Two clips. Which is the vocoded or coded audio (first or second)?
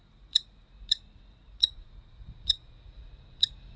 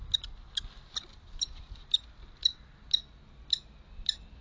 first